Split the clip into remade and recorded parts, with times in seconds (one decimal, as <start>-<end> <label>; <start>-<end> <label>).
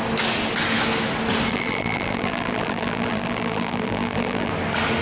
0.0-1.5 recorded; 1.5-4.5 remade; 4.5-5.0 recorded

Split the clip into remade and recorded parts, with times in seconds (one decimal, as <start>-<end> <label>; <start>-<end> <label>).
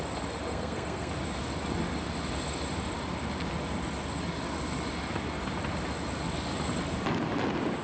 0.0-0.5 recorded; 0.5-1.1 remade; 1.1-7.8 recorded